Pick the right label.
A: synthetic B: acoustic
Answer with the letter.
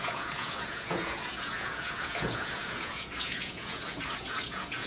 A